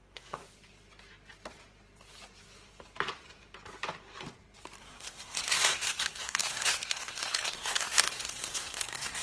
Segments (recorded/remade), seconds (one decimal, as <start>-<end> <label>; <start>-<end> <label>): 0.0-0.4 remade; 0.4-4.8 recorded; 4.8-9.2 remade